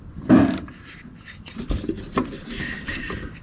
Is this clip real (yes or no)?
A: yes